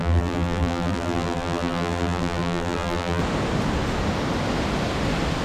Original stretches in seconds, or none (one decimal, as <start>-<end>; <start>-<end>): 3.2-5.4